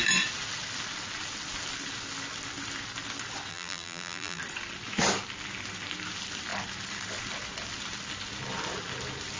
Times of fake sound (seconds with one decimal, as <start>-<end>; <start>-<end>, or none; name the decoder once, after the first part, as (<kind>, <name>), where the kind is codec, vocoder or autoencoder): 3.5-4.4 (vocoder, BigVGAN v2)